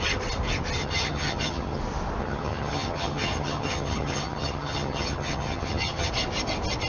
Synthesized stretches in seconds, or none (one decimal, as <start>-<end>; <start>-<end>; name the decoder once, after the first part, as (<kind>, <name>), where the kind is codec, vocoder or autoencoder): 0.8-1.8 (vocoder, HiFi-GAN); 2.2-6.1